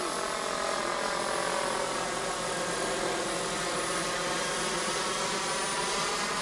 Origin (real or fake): real